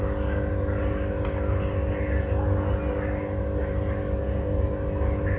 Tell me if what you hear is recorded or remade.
recorded